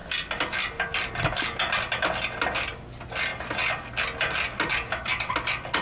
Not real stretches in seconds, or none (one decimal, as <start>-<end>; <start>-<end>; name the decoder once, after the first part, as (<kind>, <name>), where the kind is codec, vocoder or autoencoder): none